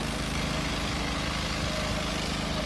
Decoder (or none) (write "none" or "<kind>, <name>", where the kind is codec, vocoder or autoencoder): none